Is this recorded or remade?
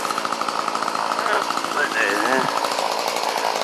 recorded